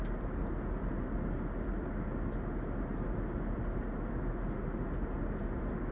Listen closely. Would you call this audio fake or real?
real